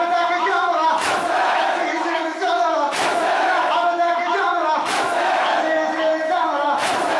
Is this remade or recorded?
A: remade